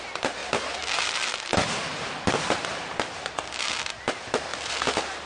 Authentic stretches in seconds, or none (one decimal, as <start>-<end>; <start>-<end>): none

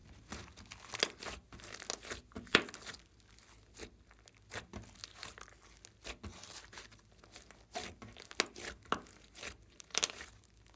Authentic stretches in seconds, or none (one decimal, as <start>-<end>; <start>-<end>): 0.0-10.8

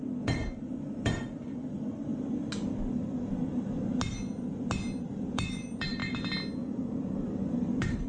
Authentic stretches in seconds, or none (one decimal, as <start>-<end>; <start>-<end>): 0.4-0.9; 2.1-5.0; 6.0-7.5